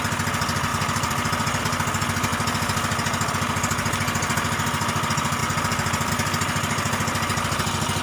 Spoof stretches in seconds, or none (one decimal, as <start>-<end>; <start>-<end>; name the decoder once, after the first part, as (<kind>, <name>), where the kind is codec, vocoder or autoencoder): 0.7-1.6 (vocoder, BigVGAN v2); 5.4-6.1